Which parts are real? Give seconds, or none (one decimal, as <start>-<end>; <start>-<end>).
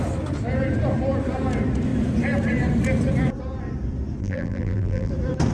0.0-4.2; 5.1-5.5